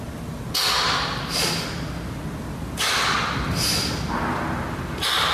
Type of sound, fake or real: real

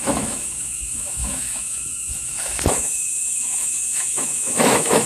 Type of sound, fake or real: fake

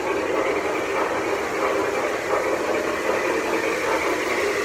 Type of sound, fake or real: real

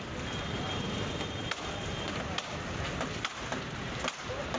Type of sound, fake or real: real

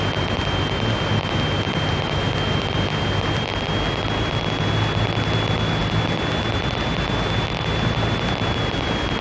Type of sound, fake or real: real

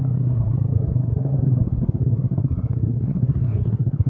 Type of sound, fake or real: fake